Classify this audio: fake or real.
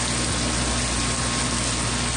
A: real